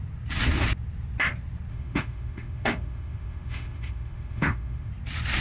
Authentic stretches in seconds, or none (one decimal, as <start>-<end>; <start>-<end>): 0.0-1.7; 4.9-5.4